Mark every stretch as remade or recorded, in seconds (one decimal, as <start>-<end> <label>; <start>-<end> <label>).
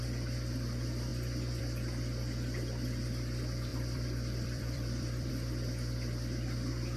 0.0-3.7 recorded; 3.7-5.3 remade; 5.3-7.0 recorded